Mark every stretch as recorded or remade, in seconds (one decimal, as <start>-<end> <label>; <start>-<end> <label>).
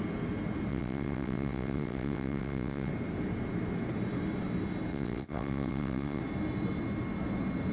0.0-0.7 recorded; 0.7-2.9 remade; 2.9-4.9 recorded; 4.9-6.2 remade; 6.2-7.7 recorded